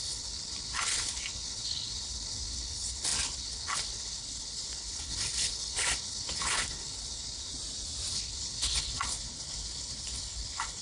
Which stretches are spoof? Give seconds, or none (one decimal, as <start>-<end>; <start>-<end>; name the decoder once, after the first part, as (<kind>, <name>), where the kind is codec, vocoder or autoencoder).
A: 0.0-7.5 (codec, HILCodec); 8.1-10.8

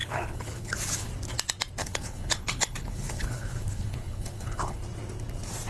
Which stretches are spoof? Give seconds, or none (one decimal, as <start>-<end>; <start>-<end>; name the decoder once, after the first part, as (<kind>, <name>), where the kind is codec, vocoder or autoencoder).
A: 0.0-1.1 (codec, HILCodec); 1.8-4.8

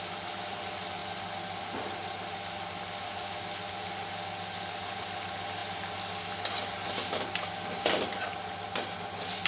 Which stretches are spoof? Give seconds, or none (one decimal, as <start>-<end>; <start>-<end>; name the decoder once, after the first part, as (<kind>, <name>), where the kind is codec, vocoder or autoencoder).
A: none

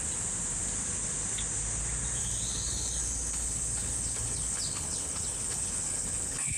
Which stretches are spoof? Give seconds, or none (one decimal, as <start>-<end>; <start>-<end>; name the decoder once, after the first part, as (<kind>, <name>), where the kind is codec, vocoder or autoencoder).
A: 2.2-6.6 (codec, HILCodec)